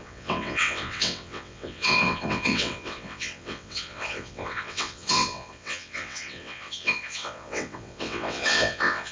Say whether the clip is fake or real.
fake